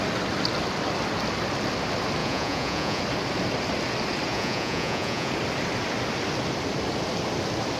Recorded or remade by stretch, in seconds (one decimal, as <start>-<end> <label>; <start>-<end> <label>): 0.0-2.2 recorded; 2.2-3.0 remade; 3.0-4.3 recorded; 4.3-5.3 remade; 5.3-7.8 recorded